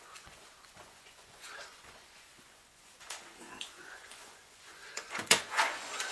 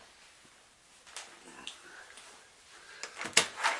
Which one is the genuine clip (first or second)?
second